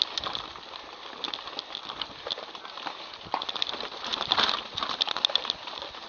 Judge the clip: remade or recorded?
recorded